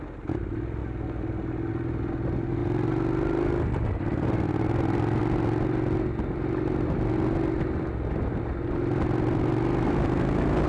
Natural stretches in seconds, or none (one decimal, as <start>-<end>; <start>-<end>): 0.0-10.7